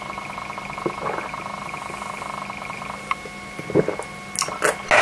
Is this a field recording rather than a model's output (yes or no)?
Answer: yes